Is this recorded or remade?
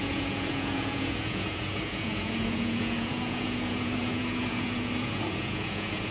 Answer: remade